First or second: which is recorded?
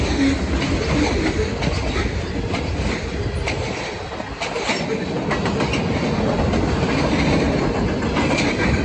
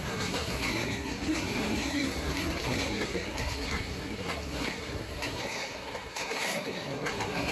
first